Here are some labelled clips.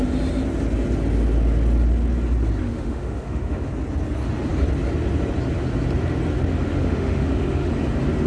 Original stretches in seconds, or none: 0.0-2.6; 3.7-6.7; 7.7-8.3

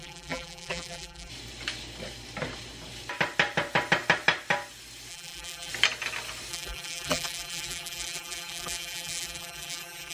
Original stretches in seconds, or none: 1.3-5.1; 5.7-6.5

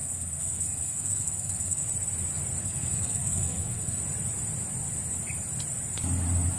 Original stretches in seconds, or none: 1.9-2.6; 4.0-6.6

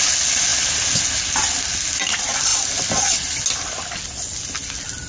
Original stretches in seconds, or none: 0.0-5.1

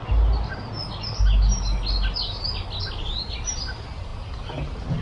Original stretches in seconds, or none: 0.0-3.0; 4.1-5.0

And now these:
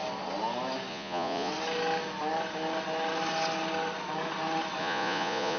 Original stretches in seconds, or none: 0.0-0.9; 1.5-4.8

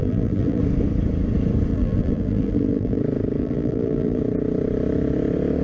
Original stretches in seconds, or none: 0.6-1.7; 3.0-3.4; 4.2-5.6